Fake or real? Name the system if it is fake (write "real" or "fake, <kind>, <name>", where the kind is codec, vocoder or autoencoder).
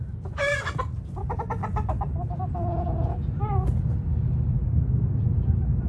real